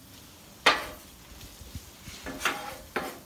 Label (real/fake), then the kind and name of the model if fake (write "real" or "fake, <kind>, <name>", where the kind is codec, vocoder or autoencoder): real